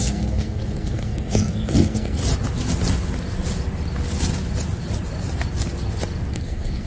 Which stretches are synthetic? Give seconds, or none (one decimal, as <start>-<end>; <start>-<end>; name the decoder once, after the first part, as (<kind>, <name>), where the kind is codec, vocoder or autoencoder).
0.0-2.2 (codec, SNAC); 6.3-6.9